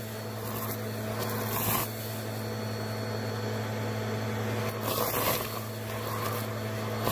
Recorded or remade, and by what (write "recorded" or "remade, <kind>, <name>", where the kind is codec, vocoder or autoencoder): recorded